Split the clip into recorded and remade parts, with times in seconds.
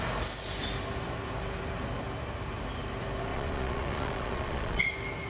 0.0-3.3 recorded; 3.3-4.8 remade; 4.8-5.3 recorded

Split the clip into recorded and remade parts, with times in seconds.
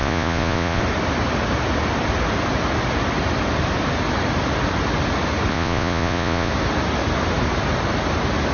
0.0-0.8 remade; 0.8-5.5 recorded; 5.5-6.5 remade; 6.5-8.5 recorded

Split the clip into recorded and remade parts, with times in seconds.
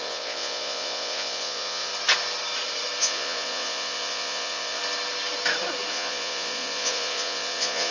0.0-1.9 remade; 1.9-3.0 recorded; 3.0-4.8 remade; 4.8-5.9 recorded; 5.9-7.9 remade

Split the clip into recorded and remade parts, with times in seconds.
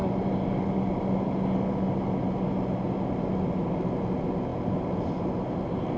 0.0-6.0 recorded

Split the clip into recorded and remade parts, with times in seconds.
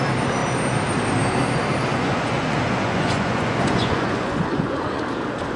0.0-1.9 recorded; 1.9-5.0 remade; 5.0-5.6 recorded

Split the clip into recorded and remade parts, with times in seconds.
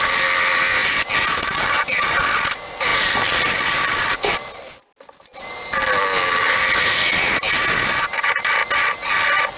0.0-9.6 recorded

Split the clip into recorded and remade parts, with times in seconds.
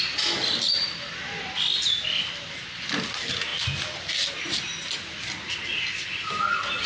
0.0-6.9 recorded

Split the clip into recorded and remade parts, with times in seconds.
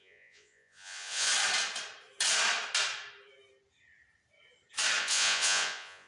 0.0-1.3 remade; 1.3-5.0 recorded; 5.0-6.1 remade